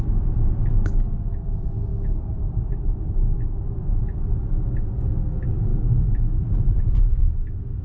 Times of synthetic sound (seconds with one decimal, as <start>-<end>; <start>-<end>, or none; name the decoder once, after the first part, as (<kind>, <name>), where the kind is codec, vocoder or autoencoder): 1.9-5.3 (vocoder, BigVGAN v2); 5.7-6.8